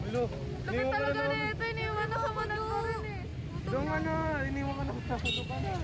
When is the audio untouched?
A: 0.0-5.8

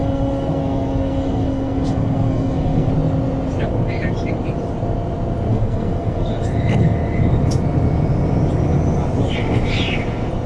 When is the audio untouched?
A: 2.9-5.5; 6.3-10.5

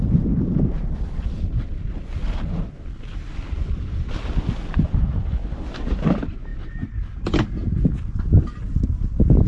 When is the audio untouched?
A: 0.0-9.5

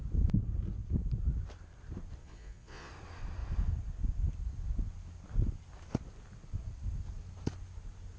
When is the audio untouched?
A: 0.0-2.2; 2.9-8.2

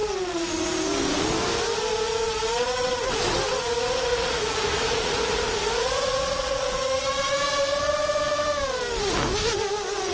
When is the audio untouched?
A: 0.0-4.1; 8.2-10.1

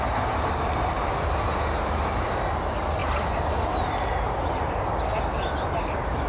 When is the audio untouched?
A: 0.0-6.3

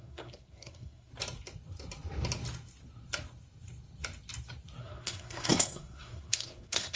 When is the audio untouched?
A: 1.1-4.8

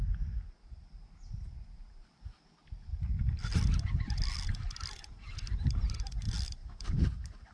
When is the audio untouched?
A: 0.0-6.6